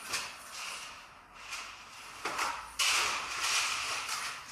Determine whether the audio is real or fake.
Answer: real